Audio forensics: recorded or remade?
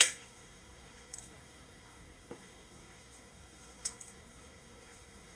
remade